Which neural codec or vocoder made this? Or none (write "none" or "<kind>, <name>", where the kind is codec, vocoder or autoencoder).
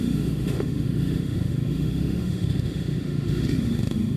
autoencoder, DAC-VAE